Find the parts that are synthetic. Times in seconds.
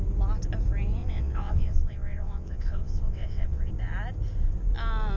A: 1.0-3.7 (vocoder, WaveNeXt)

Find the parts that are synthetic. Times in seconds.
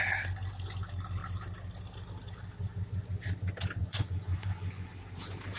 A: 3.8-4.9 (vocoder, Vocos)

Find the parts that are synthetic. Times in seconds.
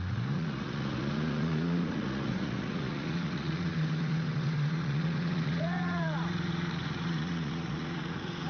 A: 0.0-8.5 (vocoder, Vocos)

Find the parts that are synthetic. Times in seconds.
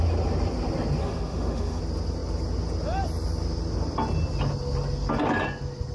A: 1.0-1.8 (autoencoder, DAC-VAE)